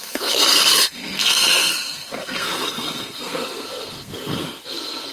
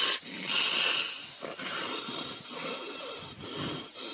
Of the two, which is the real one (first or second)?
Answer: second